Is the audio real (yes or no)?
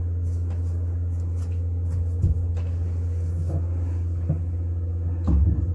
yes